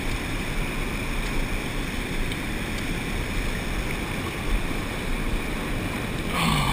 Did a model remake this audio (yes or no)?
no